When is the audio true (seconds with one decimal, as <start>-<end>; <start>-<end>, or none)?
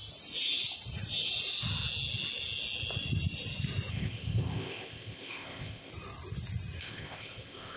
0.0-3.9; 5.9-6.8